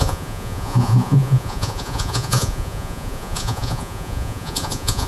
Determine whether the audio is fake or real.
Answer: fake